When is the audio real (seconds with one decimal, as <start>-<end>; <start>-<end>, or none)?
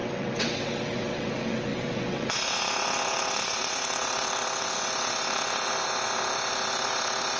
none